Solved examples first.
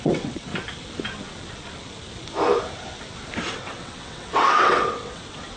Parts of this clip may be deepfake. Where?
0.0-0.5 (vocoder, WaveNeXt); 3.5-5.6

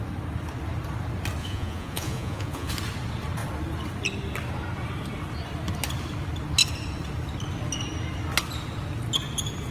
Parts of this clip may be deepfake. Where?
1.4-2.7 (vocoder, Vocos)